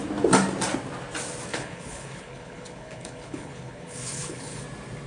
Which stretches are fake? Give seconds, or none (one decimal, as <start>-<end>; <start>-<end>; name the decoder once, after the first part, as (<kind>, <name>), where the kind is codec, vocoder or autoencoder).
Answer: 1.5-4.6 (codec, HILCodec)